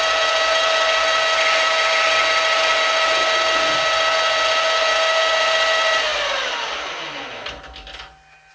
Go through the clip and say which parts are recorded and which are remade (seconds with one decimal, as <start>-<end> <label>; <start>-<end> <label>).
0.0-8.5 recorded